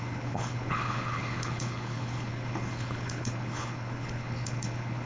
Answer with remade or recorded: remade